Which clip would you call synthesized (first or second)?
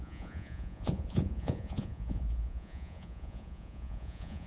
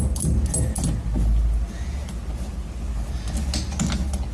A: first